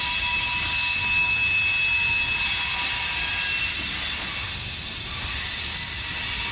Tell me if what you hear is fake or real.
real